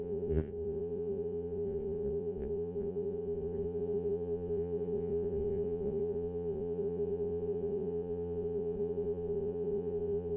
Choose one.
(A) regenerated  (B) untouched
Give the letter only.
A